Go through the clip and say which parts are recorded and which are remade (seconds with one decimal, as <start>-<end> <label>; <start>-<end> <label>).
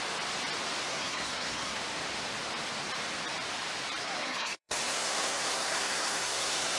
0.0-0.8 recorded; 0.8-1.8 remade; 1.8-4.0 recorded; 4.0-6.8 remade